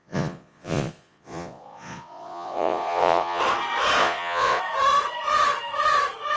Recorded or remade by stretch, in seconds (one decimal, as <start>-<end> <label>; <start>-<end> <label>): 0.0-3.4 remade; 3.4-4.0 recorded; 4.0-4.6 remade; 4.6-6.4 recorded